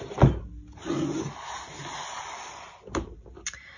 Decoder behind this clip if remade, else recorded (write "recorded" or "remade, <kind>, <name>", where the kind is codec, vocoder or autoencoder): recorded